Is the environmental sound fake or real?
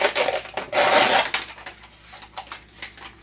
real